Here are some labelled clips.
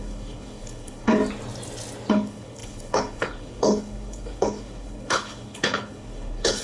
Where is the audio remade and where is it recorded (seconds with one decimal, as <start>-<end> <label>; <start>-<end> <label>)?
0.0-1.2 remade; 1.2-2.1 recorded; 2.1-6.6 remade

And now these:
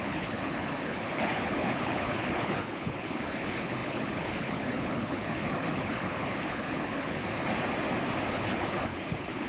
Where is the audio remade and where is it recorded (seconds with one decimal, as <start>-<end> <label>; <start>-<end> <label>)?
0.0-7.2 remade; 7.2-8.3 recorded; 8.3-9.5 remade

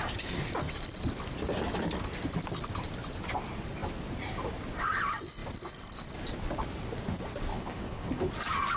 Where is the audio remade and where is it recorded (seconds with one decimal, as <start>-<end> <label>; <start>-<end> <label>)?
0.0-7.5 recorded; 7.5-8.3 remade; 8.3-8.8 recorded

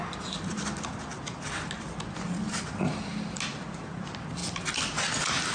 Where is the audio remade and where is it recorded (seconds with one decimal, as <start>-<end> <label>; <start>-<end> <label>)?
0.0-5.5 recorded